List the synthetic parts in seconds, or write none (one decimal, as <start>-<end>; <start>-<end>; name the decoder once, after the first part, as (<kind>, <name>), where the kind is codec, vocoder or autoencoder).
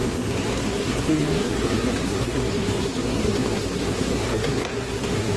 0.0-5.4 (codec, SNAC)